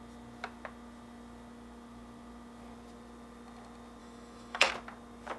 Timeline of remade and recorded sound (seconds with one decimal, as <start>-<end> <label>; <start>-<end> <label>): 0.0-4.0 recorded; 4.0-4.7 remade; 4.7-5.4 recorded